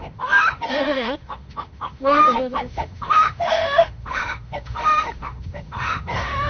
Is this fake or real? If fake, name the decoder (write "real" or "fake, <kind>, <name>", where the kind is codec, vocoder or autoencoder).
fake, autoencoder, DAC-VAE